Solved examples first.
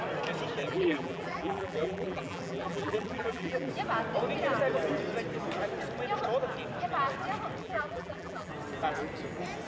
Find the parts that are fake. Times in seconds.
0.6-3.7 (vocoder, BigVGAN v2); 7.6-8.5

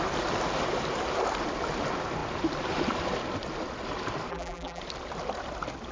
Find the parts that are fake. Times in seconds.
4.3-4.8 (vocoder, BigVGAN v2)

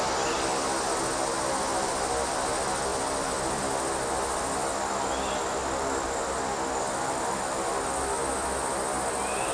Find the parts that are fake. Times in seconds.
2.9-3.6 (vocoder, BigVGAN v2)

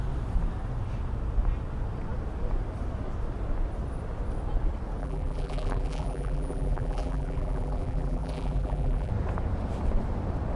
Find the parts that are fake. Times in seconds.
5.0-9.1 (vocoder, BigVGAN v2)